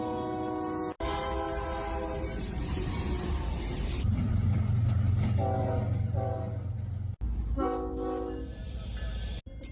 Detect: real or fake real